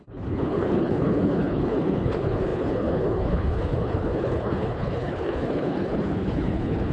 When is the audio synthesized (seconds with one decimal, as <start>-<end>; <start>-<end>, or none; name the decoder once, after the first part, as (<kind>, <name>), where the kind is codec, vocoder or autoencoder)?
0.0-6.9 (codec, HILCodec)